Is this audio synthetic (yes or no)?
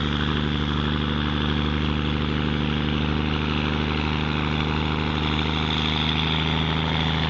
no